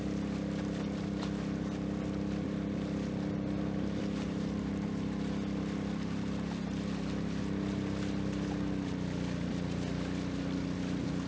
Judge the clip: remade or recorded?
recorded